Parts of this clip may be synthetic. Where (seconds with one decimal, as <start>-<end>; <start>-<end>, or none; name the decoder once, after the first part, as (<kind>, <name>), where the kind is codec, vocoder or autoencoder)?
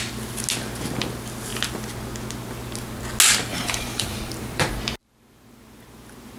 3.5-4.7 (vocoder, BigVGAN v2)